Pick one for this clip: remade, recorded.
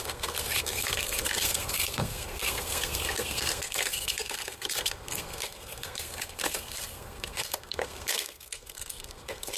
remade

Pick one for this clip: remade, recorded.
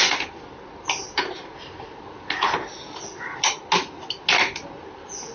recorded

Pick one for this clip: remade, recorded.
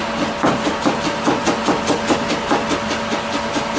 recorded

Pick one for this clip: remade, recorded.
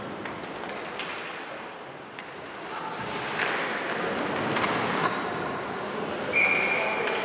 recorded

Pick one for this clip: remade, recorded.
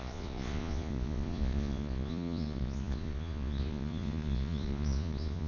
remade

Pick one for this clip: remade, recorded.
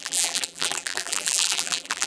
remade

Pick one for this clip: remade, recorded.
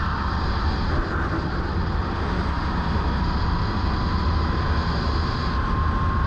recorded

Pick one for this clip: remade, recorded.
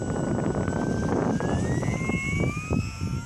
recorded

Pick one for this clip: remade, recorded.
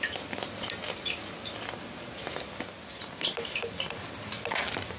recorded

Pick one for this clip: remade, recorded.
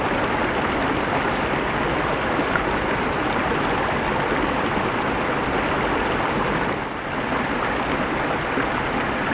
recorded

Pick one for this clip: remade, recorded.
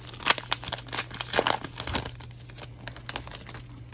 recorded